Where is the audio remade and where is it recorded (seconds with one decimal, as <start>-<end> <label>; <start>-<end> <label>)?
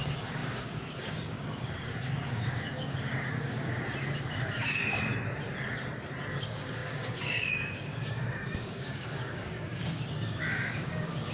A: 0.0-4.8 remade; 4.8-6.3 recorded; 6.3-11.3 remade